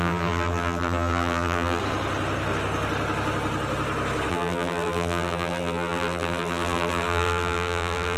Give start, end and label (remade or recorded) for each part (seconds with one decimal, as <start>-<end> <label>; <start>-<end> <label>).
0.0-1.8 remade; 1.8-4.3 recorded; 4.3-8.2 remade